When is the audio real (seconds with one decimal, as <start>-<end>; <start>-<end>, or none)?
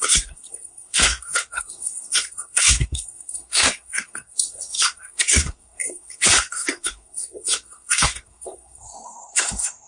none